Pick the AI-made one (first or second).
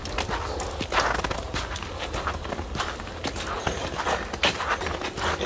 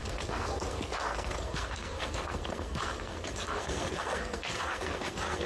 second